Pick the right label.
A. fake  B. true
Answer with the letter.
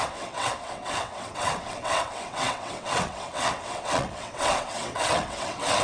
A